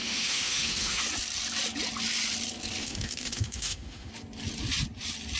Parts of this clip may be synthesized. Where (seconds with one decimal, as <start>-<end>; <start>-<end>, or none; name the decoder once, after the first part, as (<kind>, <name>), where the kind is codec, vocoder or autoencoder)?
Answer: 0.0-1.0 (autoencoder, DAC-VAE); 2.8-4.1